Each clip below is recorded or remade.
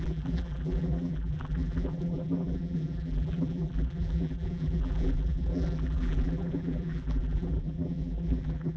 remade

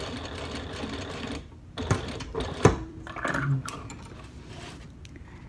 remade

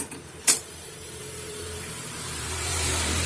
remade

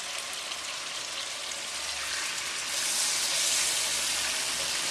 recorded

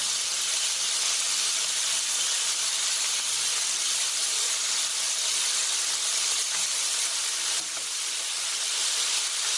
recorded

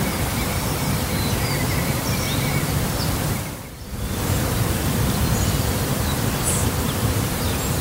remade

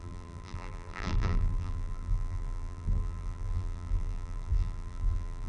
remade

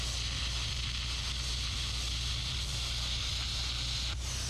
recorded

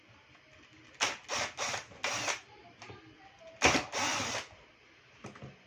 recorded